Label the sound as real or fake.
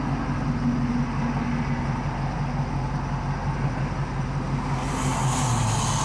real